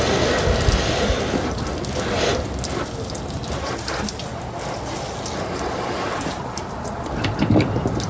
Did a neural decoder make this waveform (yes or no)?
no